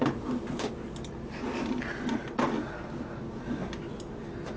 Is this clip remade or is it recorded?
recorded